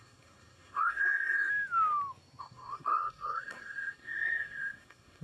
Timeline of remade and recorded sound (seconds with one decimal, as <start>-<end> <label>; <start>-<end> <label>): 0.0-1.5 remade; 1.5-2.4 recorded; 2.4-5.2 remade